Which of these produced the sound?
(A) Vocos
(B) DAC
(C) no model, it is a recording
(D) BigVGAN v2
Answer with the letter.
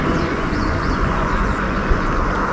A